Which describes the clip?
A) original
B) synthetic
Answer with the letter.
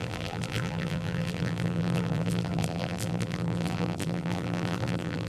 B